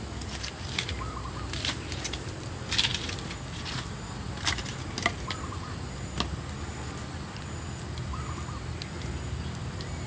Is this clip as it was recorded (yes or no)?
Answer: yes